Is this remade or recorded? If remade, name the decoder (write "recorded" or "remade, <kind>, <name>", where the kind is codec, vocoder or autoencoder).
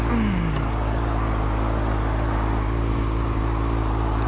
recorded